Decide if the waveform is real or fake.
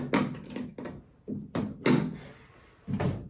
real